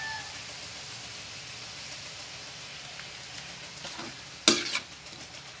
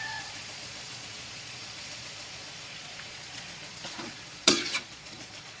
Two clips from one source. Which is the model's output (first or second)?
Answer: second